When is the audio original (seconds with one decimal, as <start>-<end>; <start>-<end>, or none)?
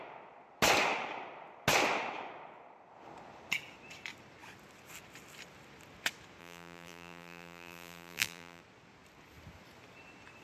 0.0-6.4; 8.6-10.4